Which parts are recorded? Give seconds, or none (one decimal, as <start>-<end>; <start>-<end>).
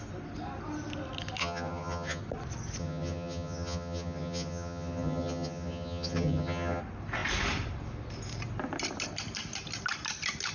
0.0-1.4; 2.2-2.8; 6.8-10.5